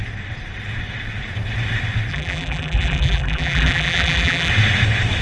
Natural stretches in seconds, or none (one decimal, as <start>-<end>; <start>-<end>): 0.0-2.1; 4.5-5.2